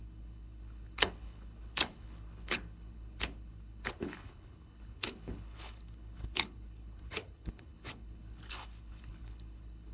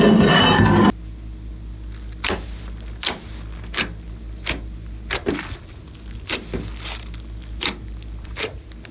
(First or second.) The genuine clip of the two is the second